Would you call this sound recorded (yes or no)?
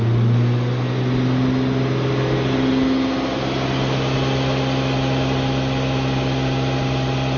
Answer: yes